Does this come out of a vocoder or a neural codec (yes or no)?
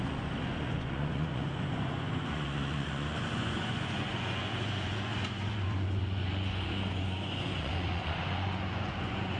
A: yes